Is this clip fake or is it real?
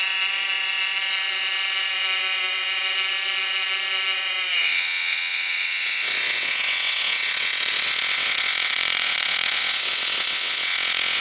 fake